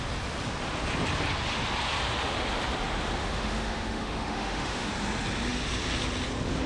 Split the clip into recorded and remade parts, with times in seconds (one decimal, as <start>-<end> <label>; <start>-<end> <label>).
0.0-3.2 recorded; 3.2-4.9 remade; 4.9-6.7 recorded